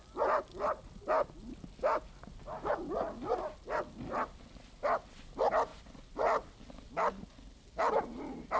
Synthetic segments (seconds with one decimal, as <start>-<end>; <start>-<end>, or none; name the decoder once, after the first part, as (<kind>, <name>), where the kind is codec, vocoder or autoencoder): none